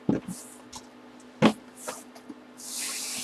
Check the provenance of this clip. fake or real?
real